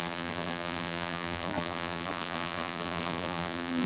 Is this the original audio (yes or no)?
no